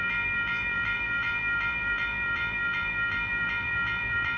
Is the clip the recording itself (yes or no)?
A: no